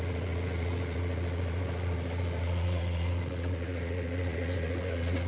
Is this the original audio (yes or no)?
no